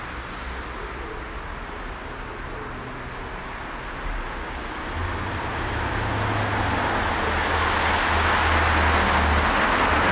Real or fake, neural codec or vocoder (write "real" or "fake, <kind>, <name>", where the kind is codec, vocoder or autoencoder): real